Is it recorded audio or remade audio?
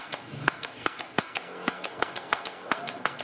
remade